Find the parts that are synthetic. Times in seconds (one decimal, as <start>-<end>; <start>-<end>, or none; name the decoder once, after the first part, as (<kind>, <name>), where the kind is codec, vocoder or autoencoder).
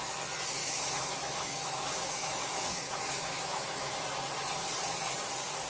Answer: 0.6-3.9 (autoencoder, DAC-VAE)